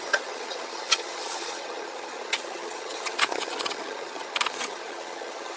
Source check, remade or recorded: remade